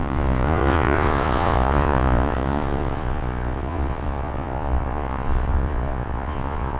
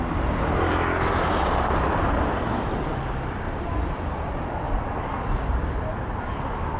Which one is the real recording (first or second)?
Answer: second